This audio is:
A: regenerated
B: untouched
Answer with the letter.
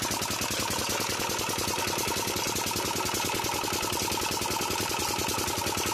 B